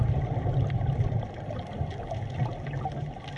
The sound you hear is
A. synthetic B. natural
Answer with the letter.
B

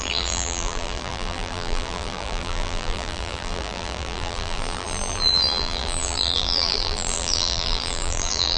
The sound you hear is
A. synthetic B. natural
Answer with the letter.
A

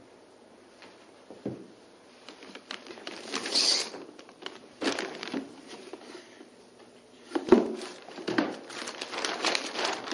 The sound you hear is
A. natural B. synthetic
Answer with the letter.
B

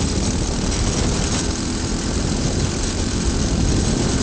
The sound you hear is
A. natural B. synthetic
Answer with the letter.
A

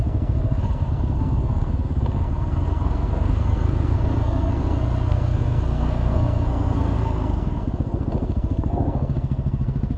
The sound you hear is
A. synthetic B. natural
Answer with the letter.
A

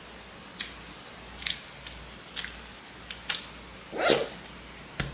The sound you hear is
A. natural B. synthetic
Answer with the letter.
A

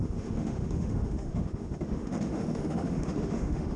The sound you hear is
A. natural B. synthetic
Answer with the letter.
B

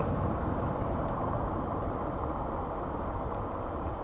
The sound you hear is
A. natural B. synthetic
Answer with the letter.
B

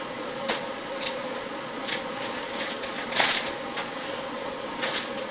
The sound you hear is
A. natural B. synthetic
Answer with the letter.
B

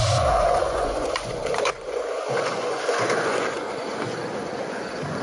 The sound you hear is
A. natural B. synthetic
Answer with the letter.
B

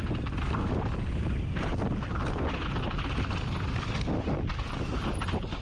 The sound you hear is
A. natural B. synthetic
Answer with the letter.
A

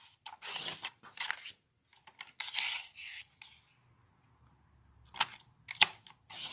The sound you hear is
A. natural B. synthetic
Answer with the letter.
A